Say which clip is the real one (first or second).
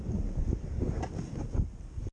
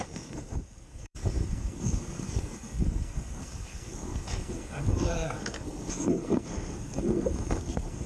first